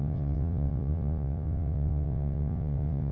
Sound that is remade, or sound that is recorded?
remade